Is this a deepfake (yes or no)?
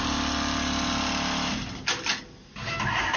no